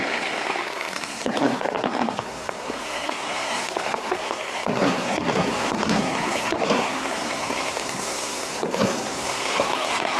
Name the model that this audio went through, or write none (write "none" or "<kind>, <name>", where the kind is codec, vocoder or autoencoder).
codec, SNAC